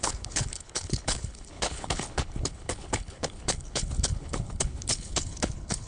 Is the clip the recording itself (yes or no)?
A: no